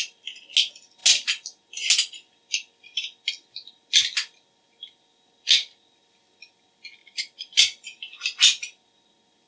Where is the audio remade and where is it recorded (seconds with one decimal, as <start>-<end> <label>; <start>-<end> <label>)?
0.0-9.5 recorded